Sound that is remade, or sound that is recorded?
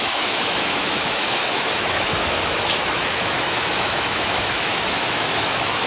remade